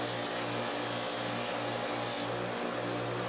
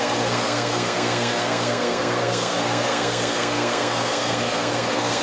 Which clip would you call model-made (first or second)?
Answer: second